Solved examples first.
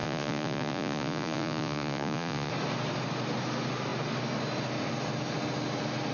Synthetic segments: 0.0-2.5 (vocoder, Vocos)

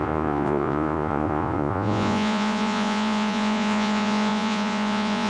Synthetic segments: 0.0-5.3 (vocoder, Vocos)

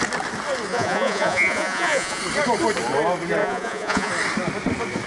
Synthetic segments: 0.7-2.2 (vocoder, Vocos); 3.4-4.1

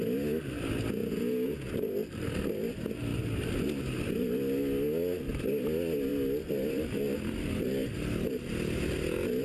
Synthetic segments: 1.0-1.7 (vocoder, Vocos)

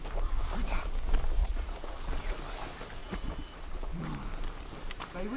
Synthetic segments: 1.4-2.4 (vocoder, Vocos); 3.0-4.0

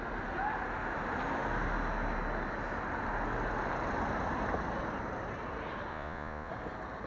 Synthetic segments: 5.9-6.5 (vocoder, Vocos)

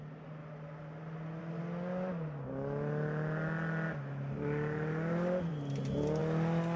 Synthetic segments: none

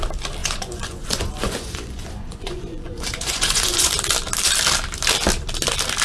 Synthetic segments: 0.4-3.9 (vocoder, Vocos)